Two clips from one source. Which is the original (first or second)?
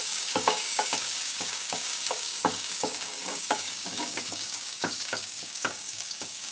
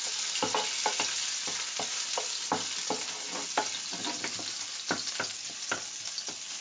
second